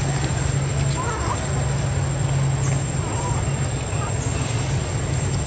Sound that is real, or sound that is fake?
real